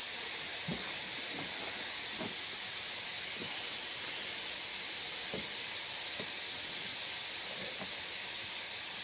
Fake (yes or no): no